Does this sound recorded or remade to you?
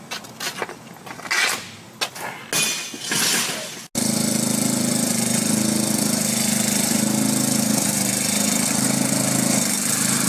recorded